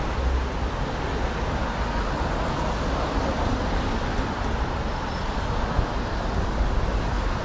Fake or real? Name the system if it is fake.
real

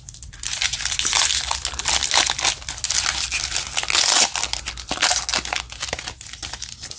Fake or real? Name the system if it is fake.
real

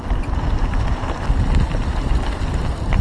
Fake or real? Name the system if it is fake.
real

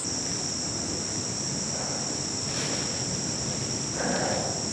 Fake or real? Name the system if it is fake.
real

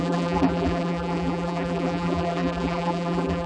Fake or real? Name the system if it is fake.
fake, vocoder, BigVGAN v2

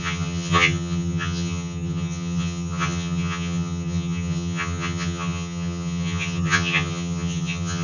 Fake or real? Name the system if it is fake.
fake, vocoder, HiFi-GAN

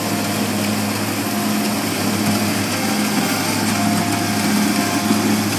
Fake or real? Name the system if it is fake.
real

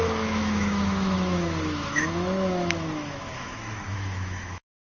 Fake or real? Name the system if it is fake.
fake, autoencoder, DAC-VAE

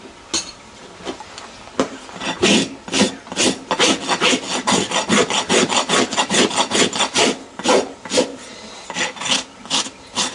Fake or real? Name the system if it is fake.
real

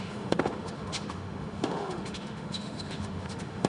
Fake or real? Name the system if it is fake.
fake, autoencoder, DAC-VAE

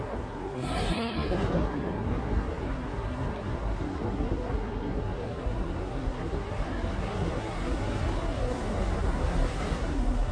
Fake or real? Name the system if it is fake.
fake, codec, SNAC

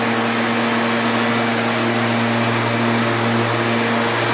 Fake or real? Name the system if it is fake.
real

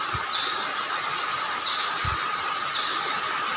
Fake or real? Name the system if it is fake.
real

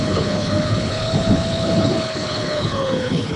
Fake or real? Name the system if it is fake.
fake, codec, HILCodec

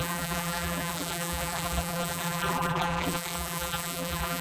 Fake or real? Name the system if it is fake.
fake, vocoder, BigVGAN v2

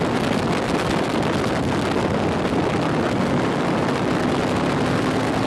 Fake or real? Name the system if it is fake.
real